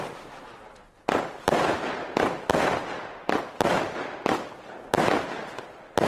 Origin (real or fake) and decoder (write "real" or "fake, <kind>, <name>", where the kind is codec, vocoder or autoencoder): real